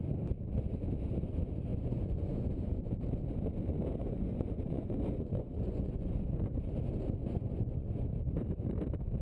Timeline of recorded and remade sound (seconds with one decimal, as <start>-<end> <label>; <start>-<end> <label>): 0.0-1.7 recorded; 1.7-2.9 remade; 2.9-4.0 recorded; 4.0-6.7 remade; 6.7-7.2 recorded; 7.2-8.1 remade; 8.1-9.2 recorded